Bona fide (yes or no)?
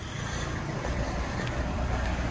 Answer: yes